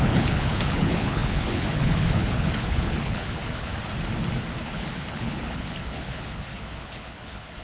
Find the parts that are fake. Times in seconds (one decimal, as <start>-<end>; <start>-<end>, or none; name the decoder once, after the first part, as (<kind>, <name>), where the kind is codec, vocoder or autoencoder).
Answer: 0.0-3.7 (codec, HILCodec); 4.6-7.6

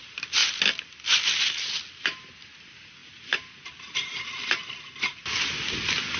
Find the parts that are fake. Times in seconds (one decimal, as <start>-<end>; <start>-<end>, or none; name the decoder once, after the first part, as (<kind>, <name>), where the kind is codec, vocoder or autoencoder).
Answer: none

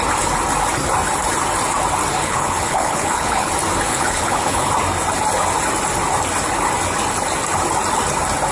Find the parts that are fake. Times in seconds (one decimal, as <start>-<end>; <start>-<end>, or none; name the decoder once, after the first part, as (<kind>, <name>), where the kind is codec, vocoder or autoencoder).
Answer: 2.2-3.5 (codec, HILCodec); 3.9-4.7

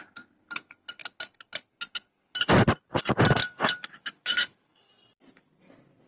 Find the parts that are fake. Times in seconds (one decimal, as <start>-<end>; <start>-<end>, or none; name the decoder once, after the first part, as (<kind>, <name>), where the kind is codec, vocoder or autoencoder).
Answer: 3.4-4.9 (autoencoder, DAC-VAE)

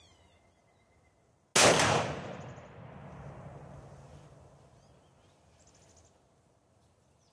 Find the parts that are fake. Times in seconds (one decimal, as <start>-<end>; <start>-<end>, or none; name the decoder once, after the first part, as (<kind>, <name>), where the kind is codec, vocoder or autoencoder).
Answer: none